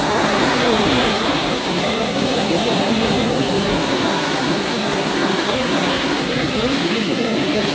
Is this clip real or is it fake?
fake